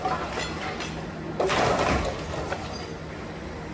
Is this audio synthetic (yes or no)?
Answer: no